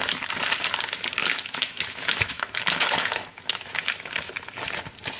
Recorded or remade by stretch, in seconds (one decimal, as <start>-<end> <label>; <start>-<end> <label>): 0.0-1.2 recorded; 1.2-4.3 remade; 4.3-5.2 recorded